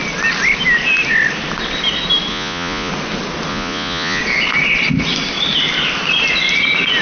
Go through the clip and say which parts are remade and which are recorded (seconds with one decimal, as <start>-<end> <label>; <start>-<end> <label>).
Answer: 0.0-2.3 recorded; 2.3-2.9 remade; 2.9-3.5 recorded; 3.5-4.2 remade; 4.2-7.0 recorded

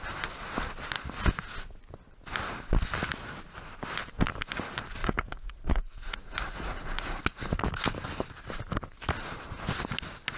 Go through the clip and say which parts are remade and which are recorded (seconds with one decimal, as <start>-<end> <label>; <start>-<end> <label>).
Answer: 0.0-5.0 recorded; 5.0-7.2 remade; 7.2-10.4 recorded

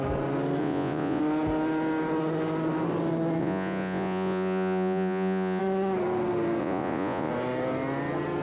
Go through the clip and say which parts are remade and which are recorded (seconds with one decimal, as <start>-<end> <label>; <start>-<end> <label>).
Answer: 0.0-0.6 recorded; 0.6-1.2 remade; 1.2-3.4 recorded; 3.4-5.6 remade; 5.6-6.6 recorded; 6.6-7.3 remade; 7.3-8.4 recorded

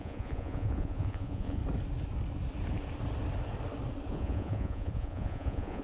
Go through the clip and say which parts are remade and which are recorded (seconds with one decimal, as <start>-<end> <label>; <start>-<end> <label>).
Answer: 0.0-1.6 remade; 1.6-4.1 recorded; 4.1-5.8 remade